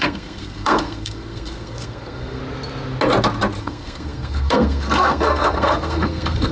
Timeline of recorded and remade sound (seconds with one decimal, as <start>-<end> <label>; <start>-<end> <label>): 0.0-2.4 remade; 2.4-3.6 recorded; 3.6-6.5 remade